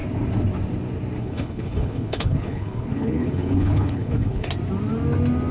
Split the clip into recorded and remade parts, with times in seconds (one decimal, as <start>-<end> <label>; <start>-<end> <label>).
0.0-1.2 recorded; 1.2-4.5 remade; 4.5-5.5 recorded